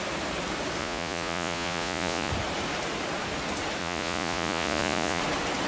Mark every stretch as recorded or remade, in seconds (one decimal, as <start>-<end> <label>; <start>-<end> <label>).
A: 0.0-0.8 recorded; 0.8-2.3 remade; 2.3-3.8 recorded; 3.8-5.2 remade; 5.2-5.7 recorded